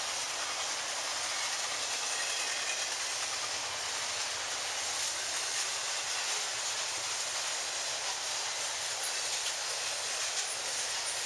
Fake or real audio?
real